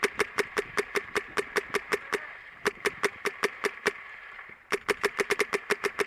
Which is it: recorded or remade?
remade